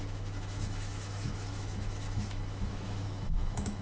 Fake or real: fake